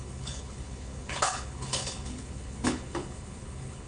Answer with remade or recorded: remade